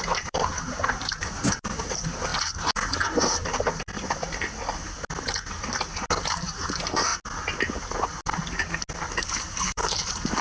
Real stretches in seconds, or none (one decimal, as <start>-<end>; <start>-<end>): 2.3-6.3; 7.1-9.2